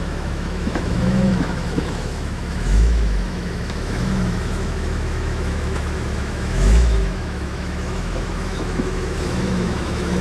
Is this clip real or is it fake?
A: fake